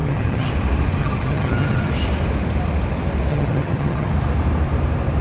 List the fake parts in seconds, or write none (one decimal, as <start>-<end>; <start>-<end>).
0.0-0.5; 1.0-1.9; 3.3-4.1

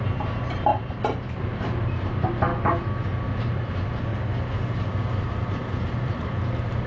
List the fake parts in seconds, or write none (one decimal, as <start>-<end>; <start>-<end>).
0.0-2.5; 3.4-4.1; 5.3-6.9

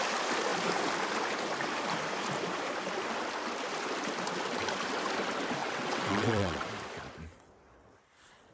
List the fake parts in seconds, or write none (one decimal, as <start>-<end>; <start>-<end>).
5.6-6.7